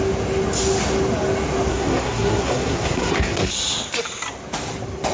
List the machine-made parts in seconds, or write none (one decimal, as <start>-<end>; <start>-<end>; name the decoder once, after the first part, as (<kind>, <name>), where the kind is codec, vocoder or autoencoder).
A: 1.7-3.5 (codec, SNAC)